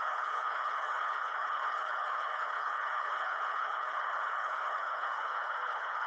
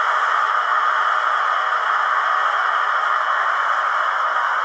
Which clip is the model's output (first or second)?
first